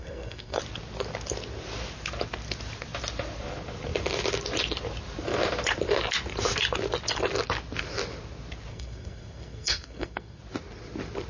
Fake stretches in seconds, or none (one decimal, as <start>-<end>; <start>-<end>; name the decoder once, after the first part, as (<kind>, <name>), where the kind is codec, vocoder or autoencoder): 0.0-0.6 (codec, SNAC); 8.7-10.4